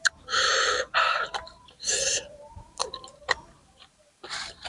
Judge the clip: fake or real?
fake